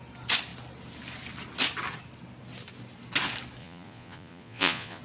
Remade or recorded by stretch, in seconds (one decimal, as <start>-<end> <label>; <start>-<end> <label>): 0.0-3.6 recorded; 3.6-5.0 remade